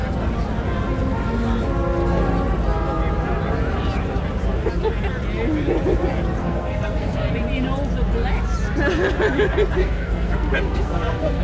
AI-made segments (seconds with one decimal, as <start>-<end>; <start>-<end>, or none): 6.4-7.3; 9.8-11.4

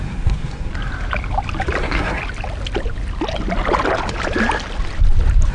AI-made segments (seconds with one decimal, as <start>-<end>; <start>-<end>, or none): 0.0-0.7; 1.8-2.2